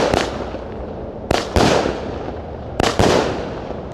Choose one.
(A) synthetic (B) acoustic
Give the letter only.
B